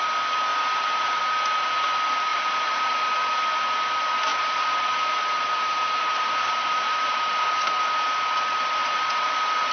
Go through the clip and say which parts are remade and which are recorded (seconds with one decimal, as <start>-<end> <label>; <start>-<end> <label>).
0.0-0.5 recorded; 0.5-1.2 remade; 1.2-2.3 recorded; 2.3-3.0 remade; 3.0-4.3 recorded; 4.3-7.8 remade; 7.8-8.8 recorded; 8.8-9.7 remade